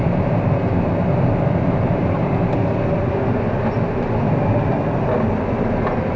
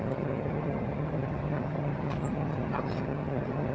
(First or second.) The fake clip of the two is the second